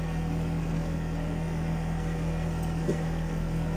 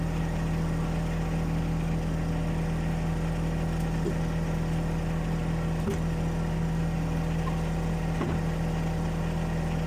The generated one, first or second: first